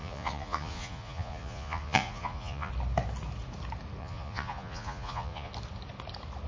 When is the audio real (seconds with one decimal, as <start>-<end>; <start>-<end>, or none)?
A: 2.7-4.0; 5.5-6.5